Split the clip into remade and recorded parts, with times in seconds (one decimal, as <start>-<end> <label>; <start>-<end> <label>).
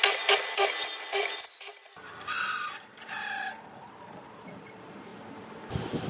0.0-6.1 recorded